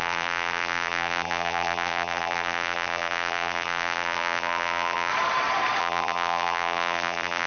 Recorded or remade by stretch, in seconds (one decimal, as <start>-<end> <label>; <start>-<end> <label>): 0.0-5.1 remade; 5.1-5.8 recorded; 5.8-7.5 remade